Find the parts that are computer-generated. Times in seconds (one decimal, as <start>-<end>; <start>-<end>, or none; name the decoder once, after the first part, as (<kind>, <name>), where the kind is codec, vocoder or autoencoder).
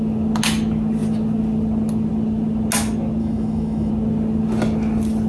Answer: 3.2-3.9 (autoencoder, DAC-VAE)